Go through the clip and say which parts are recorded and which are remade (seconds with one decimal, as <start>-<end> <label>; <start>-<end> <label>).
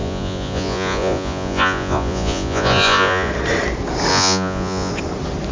0.0-3.3 remade; 3.3-4.1 recorded; 4.1-4.9 remade; 4.9-5.5 recorded